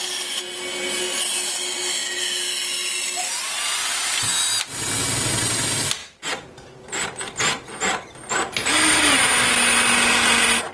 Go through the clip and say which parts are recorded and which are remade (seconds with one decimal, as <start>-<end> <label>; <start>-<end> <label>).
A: 0.0-10.7 recorded